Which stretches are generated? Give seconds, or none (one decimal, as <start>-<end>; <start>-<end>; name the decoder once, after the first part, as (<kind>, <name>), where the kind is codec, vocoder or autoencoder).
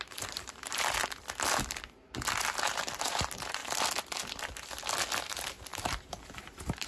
0.0-1.0 (vocoder, BigVGAN v2); 3.0-3.6; 5.2-6.9